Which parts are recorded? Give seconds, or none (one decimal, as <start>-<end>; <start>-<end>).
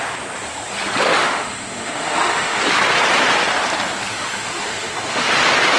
0.0-1.1; 2.6-4.1; 5.3-5.8